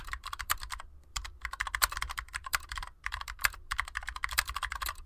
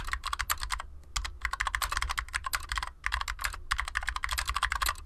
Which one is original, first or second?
second